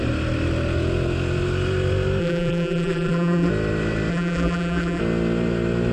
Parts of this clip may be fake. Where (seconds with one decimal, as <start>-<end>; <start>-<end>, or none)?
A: 2.2-3.5; 4.1-5.0